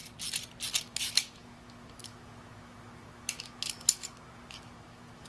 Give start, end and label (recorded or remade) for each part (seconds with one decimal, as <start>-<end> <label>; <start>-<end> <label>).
0.0-0.8 recorded; 0.8-5.3 remade